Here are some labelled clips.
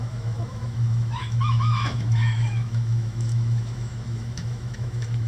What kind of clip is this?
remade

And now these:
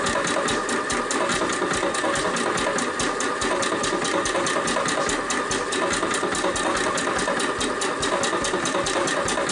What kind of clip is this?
recorded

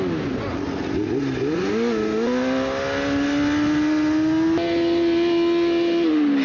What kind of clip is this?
recorded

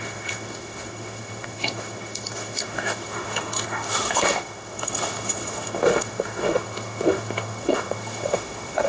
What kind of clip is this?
remade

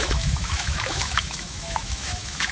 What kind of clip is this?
remade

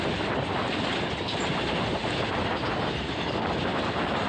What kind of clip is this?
recorded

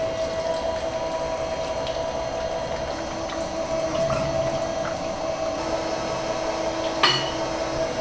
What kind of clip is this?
recorded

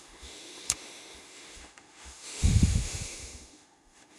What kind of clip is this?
remade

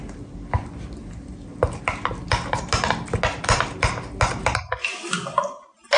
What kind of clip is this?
recorded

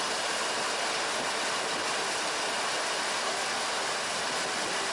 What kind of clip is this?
recorded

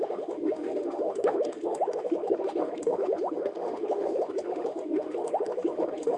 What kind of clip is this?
remade